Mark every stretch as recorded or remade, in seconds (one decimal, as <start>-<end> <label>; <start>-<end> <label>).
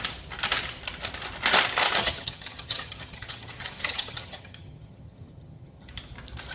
0.0-2.0 recorded; 2.0-5.9 remade; 5.9-6.5 recorded